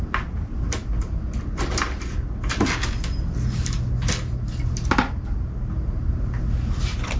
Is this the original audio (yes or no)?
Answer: yes